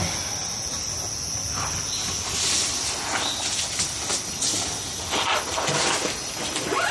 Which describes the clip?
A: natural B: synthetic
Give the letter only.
A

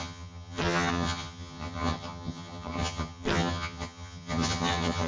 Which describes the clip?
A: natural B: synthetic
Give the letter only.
B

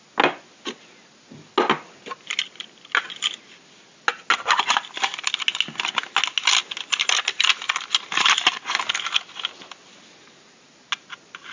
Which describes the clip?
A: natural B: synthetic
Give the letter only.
A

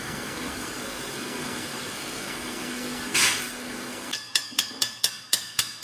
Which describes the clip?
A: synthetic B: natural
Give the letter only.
A